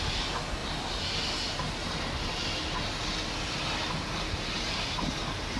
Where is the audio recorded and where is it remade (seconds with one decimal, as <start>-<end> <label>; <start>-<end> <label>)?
0.0-5.6 recorded

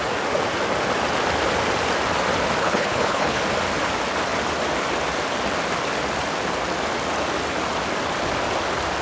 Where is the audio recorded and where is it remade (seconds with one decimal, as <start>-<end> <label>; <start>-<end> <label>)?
0.0-2.6 recorded; 2.6-3.4 remade; 3.4-9.0 recorded